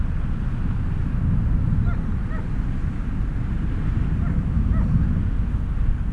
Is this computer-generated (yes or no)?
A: no